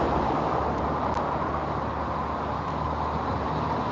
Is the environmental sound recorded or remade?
recorded